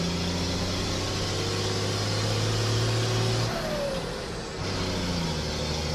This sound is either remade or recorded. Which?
recorded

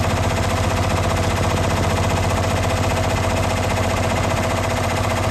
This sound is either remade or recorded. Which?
recorded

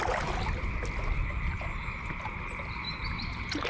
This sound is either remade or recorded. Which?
recorded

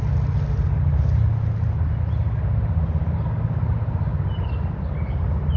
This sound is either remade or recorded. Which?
recorded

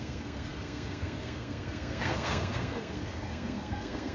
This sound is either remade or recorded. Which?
remade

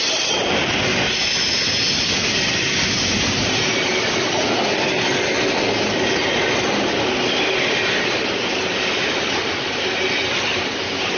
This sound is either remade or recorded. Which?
recorded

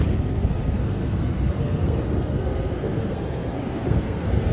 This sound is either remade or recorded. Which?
remade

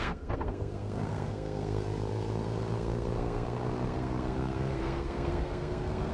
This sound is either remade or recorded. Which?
remade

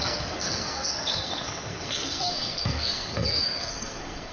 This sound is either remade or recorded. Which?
remade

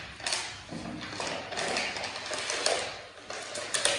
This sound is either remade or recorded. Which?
recorded